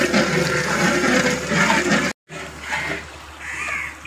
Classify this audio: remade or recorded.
recorded